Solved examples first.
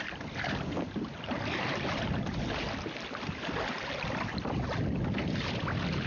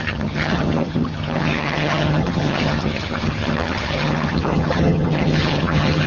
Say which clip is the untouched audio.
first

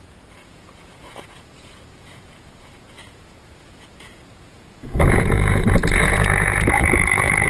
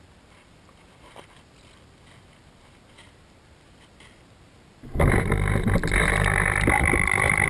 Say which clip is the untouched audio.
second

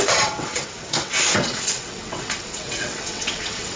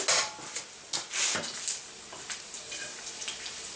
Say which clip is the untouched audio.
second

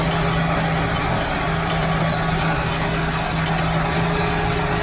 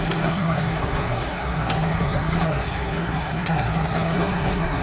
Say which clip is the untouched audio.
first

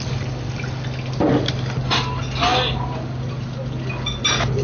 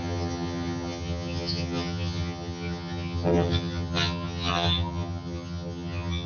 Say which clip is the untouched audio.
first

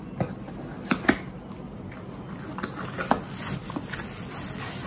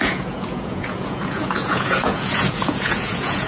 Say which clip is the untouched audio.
first